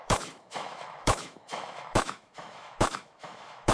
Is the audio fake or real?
fake